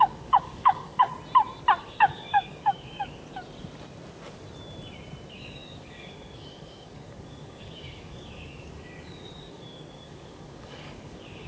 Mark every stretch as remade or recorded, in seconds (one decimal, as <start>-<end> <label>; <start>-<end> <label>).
0.0-1.1 remade; 1.1-1.9 recorded; 1.9-3.2 remade; 3.2-5.3 recorded; 5.3-11.5 remade